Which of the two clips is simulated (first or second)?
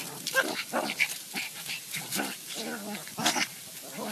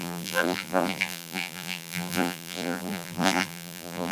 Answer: second